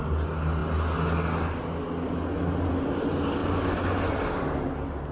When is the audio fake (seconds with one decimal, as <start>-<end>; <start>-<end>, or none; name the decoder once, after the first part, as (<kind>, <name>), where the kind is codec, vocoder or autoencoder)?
none